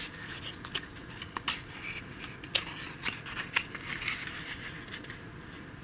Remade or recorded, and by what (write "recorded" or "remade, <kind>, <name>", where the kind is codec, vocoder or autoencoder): recorded